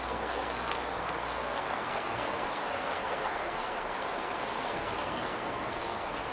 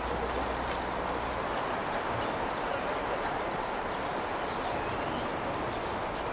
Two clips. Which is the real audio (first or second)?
second